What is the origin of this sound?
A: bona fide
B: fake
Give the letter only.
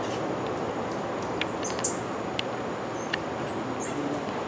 A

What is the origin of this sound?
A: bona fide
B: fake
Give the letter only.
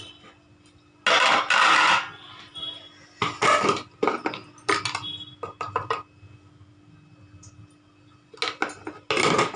A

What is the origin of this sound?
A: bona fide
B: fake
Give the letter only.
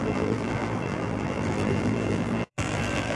B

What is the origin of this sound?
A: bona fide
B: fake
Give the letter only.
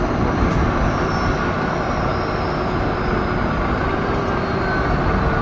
A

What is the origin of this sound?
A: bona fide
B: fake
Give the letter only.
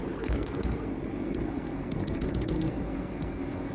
B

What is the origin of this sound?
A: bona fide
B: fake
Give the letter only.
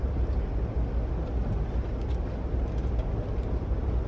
A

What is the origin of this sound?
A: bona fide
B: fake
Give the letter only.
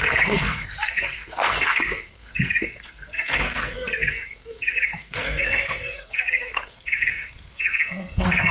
B